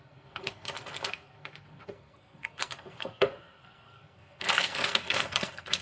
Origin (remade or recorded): remade